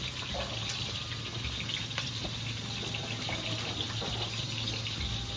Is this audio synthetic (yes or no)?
no